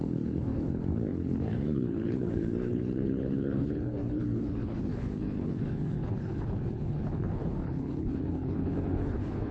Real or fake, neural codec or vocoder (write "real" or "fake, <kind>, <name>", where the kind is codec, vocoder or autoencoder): fake, codec, HILCodec